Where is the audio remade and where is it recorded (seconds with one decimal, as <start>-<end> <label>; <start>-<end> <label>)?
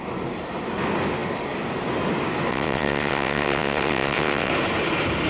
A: 0.0-2.5 recorded; 2.5-4.5 remade; 4.5-5.3 recorded